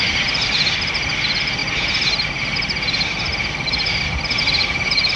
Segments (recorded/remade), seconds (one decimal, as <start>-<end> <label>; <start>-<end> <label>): 0.0-1.6 remade; 1.6-3.5 recorded; 3.5-5.2 remade